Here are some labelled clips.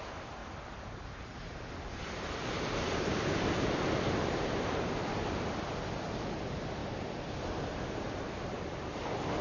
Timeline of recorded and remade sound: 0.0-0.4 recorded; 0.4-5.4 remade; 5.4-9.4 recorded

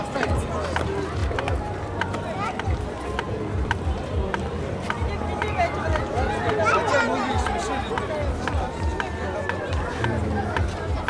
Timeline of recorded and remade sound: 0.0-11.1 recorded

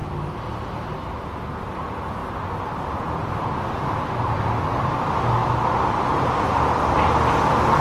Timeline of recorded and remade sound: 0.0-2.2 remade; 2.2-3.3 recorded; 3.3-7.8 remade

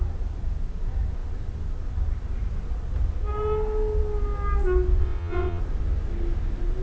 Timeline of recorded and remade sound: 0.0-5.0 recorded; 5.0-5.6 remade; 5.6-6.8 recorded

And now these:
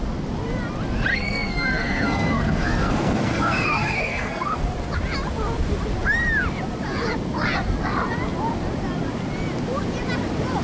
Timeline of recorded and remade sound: 0.0-1.1 recorded; 1.1-4.6 remade; 4.6-10.6 recorded

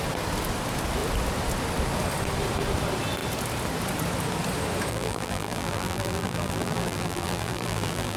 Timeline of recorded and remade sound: 0.0-4.9 recorded; 4.9-8.2 remade

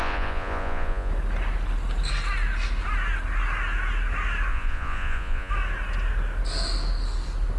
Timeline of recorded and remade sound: 0.0-1.1 remade; 1.1-4.5 recorded; 4.5-5.5 remade; 5.5-7.6 recorded

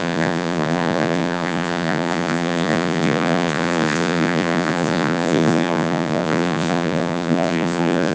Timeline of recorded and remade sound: 0.0-8.1 remade